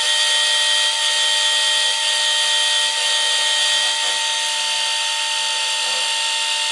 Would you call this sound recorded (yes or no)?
yes